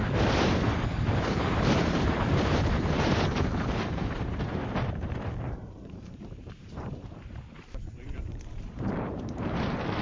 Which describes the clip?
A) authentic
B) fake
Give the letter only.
B